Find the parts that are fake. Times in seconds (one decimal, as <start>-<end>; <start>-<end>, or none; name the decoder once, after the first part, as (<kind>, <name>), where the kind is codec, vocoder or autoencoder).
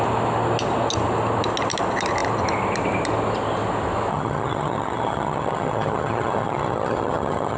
4.1-7.6 (vocoder, HiFi-GAN)